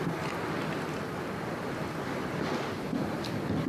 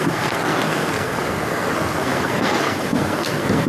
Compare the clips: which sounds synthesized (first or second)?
second